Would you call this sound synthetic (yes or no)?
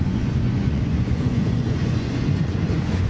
yes